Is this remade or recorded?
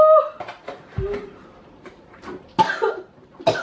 recorded